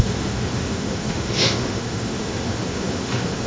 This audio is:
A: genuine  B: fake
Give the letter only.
B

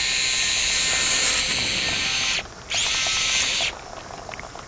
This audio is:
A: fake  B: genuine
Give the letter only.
B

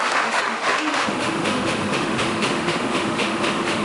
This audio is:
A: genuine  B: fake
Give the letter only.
B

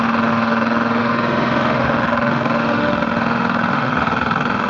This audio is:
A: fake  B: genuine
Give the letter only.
A